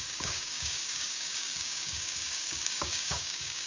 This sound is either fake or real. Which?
fake